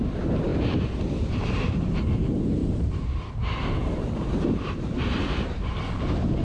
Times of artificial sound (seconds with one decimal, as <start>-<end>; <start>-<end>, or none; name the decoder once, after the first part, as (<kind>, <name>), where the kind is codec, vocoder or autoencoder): 0.0-6.4 (vocoder, BigVGAN v2)